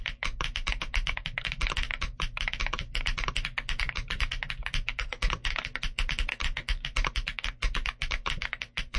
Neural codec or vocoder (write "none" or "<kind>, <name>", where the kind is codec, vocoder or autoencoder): vocoder, BigVGAN v2